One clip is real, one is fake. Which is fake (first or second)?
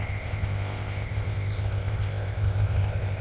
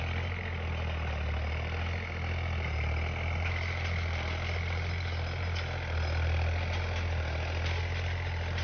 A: first